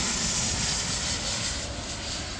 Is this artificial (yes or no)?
no